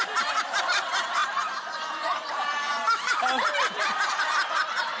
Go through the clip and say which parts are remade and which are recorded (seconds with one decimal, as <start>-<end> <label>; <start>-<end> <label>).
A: 0.0-1.2 recorded; 1.2-4.2 remade; 4.2-5.0 recorded